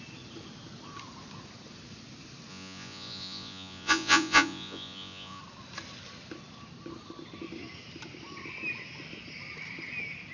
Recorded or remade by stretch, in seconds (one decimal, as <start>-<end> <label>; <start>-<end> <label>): 0.0-2.5 recorded; 2.5-5.4 remade; 5.4-10.3 recorded